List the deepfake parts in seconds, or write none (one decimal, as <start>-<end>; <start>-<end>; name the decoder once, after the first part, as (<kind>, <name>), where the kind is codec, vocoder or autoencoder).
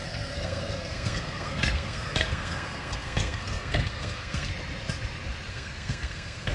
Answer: 0.0-4.5 (codec, SNAC); 5.5-6.5